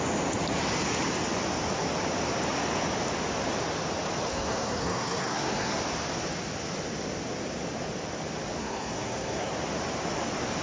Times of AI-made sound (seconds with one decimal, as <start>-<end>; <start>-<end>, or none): 4.3-5.8; 8.6-9.5